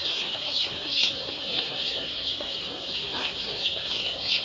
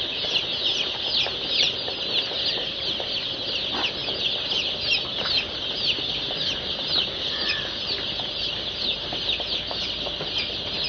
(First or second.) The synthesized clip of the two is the first